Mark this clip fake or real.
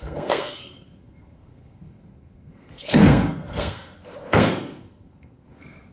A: fake